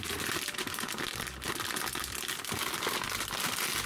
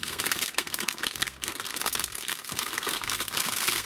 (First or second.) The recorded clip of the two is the first